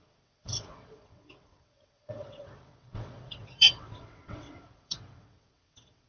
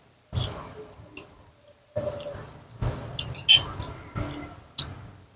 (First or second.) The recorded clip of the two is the second